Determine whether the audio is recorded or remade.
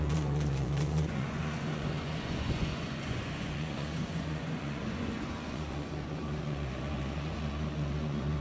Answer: remade